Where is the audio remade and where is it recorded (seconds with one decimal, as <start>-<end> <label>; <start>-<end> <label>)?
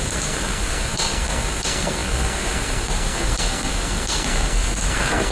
0.0-5.3 remade